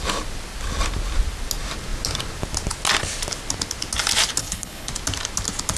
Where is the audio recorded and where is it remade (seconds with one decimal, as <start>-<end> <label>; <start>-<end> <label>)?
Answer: 0.0-4.4 recorded; 4.4-4.9 remade; 4.9-5.8 recorded